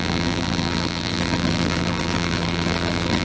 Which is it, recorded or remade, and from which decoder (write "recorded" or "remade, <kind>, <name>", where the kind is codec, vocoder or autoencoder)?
remade, vocoder, BigVGAN v2